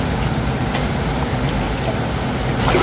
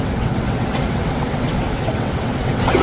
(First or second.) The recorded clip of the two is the first